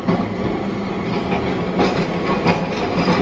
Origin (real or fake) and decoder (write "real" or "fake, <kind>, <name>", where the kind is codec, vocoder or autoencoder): real